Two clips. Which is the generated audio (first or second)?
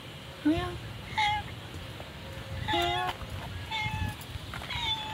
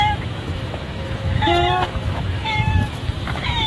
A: second